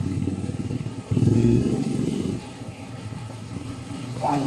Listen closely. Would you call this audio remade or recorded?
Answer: remade